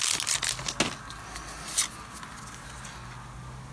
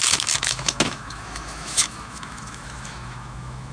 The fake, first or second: second